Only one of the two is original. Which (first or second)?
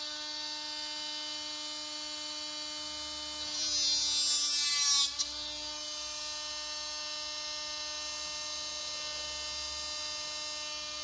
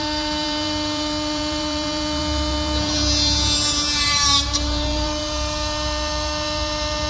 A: first